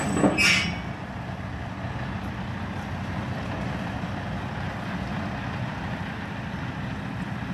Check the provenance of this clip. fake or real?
real